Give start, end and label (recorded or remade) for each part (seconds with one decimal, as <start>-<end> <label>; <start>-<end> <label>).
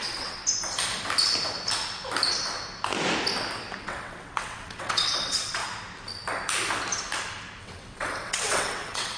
0.0-0.4 remade; 0.4-3.8 recorded; 3.8-5.6 remade; 5.6-7.6 recorded; 7.6-9.2 remade